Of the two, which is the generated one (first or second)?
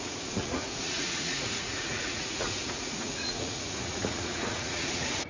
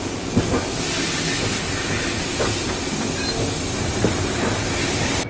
first